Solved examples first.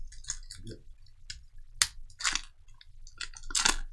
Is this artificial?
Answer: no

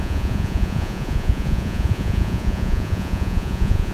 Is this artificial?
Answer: yes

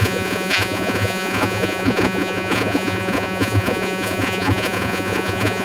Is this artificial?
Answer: yes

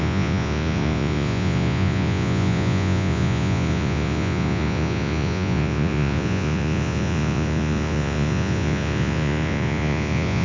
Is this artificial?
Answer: yes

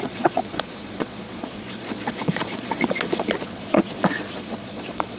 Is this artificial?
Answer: yes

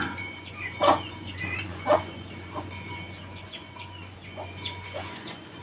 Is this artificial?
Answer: yes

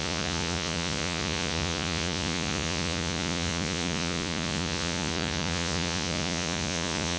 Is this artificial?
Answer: yes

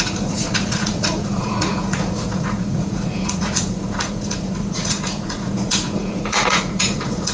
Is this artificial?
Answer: yes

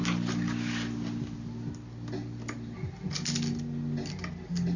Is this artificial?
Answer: no